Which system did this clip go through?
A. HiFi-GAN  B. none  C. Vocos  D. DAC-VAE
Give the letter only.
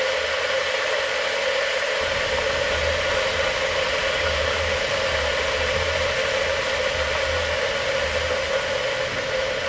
B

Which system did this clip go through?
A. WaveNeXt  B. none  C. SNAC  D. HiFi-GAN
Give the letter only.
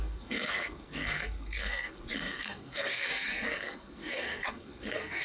C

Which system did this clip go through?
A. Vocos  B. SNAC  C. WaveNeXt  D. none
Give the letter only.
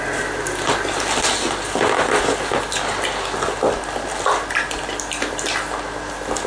D